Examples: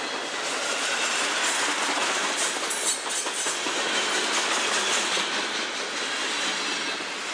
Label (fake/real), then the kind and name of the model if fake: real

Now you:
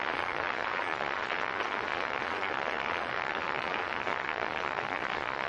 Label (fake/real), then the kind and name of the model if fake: fake, vocoder, Vocos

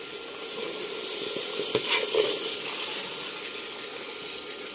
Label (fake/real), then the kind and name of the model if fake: real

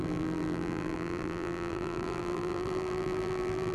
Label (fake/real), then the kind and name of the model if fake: fake, vocoder, BigVGAN v2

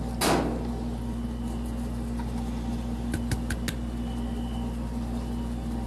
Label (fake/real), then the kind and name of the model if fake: real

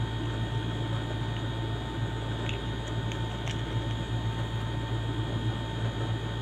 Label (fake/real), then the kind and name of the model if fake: real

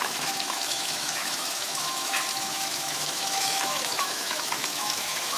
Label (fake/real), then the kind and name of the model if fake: fake, autoencoder, DAC-VAE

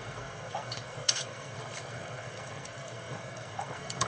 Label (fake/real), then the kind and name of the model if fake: fake, codec, SNAC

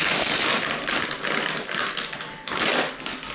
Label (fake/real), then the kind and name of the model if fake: real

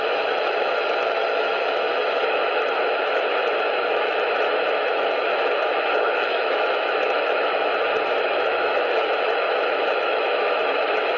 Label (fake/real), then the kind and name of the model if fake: fake, autoencoder, DAC-VAE